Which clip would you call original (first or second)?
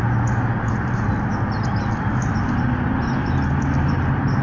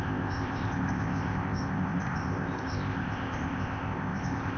first